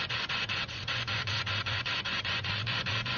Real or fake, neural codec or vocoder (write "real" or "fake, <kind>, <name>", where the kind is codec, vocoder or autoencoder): fake, vocoder, Vocos